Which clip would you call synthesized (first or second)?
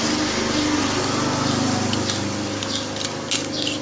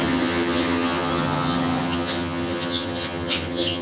second